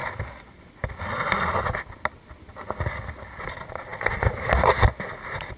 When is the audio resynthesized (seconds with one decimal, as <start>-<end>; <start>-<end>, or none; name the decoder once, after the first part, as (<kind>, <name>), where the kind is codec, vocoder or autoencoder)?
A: none